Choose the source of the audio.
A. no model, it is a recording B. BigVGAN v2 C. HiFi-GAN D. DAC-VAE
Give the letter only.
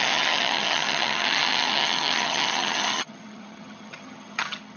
C